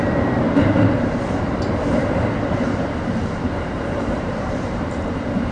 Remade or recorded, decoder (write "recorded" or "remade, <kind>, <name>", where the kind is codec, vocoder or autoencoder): remade, vocoder, BigVGAN v2